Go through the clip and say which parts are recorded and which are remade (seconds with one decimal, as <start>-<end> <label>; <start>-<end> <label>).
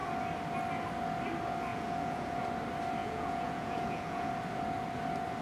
0.0-1.7 recorded; 1.7-2.4 remade; 2.4-3.0 recorded; 3.0-4.3 remade; 4.3-5.4 recorded